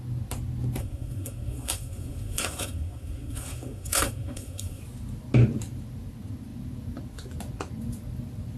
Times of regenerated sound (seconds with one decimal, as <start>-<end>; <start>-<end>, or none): 0.8-4.8